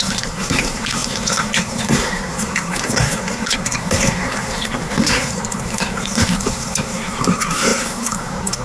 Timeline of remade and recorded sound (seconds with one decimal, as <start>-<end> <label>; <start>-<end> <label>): 0.0-8.6 remade